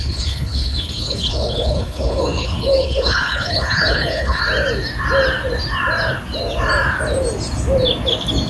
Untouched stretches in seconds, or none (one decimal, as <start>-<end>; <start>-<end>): 4.4-8.5